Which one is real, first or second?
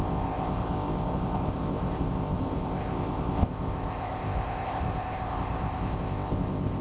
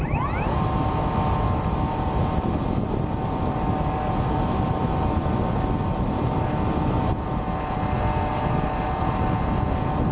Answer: second